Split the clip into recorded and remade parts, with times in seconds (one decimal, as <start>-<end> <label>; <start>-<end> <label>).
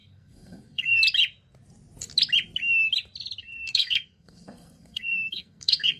0.0-1.0 remade; 1.0-3.4 recorded; 3.4-6.0 remade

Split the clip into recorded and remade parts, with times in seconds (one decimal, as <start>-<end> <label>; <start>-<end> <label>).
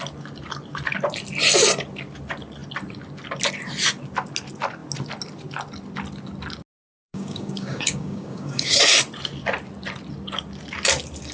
0.0-7.0 recorded; 7.0-8.8 remade; 8.8-11.3 recorded